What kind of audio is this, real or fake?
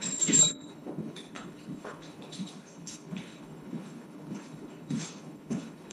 fake